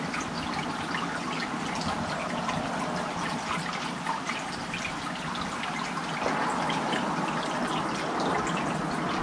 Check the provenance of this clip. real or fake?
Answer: real